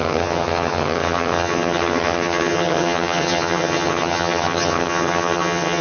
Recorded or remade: remade